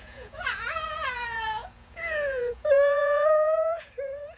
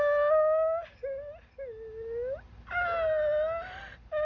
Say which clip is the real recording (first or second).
second